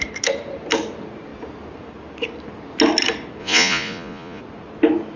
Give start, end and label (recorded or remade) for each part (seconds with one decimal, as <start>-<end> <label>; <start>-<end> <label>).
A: 0.0-3.4 recorded; 3.4-4.4 remade; 4.4-5.2 recorded